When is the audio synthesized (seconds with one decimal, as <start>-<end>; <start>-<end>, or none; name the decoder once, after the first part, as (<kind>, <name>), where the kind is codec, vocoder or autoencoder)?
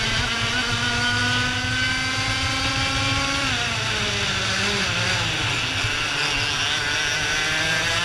none